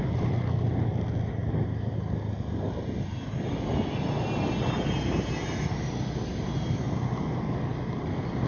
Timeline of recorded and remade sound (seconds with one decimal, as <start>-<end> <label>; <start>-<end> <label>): 0.0-8.5 recorded